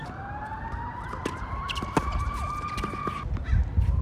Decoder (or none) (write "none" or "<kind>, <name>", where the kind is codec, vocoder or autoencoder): none